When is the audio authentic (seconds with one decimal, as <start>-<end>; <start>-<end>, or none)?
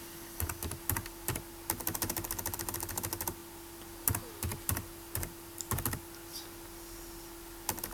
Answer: 0.0-7.9